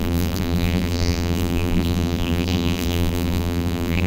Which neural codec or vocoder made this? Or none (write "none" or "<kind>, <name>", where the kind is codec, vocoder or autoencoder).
vocoder, BigVGAN v2